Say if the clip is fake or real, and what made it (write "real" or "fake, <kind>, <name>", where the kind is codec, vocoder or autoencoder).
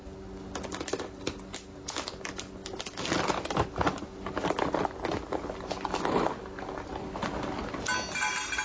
real